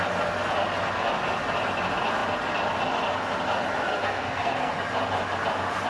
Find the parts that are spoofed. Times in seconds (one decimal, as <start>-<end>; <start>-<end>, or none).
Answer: 3.9-4.7